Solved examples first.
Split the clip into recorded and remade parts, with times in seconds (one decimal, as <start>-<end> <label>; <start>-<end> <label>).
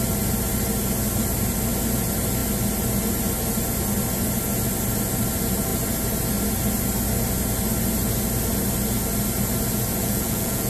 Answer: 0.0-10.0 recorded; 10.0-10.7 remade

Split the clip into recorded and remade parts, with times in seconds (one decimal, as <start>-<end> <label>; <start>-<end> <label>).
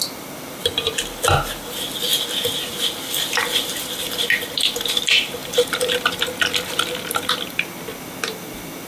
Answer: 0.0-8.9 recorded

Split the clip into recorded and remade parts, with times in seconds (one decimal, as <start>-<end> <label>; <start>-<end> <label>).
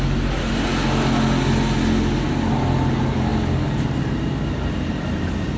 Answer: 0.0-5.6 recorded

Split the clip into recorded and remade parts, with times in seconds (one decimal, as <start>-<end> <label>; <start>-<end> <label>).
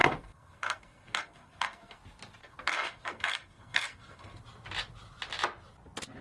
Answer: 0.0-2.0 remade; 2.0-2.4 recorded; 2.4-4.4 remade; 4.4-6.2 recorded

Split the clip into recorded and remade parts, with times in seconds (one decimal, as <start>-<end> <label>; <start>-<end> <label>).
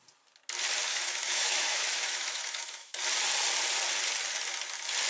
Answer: 0.0-0.9 recorded; 0.9-3.0 remade; 3.0-5.1 recorded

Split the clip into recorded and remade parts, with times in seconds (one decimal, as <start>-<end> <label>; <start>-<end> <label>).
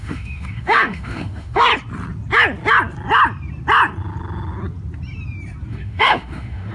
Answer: 0.0-1.7 remade; 1.7-5.7 recorded; 5.7-6.7 remade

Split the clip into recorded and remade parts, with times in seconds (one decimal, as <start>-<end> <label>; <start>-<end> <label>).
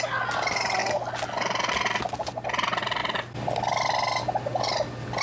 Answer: 0.0-5.2 recorded